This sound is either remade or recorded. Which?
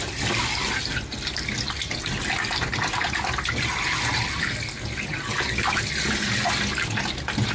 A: recorded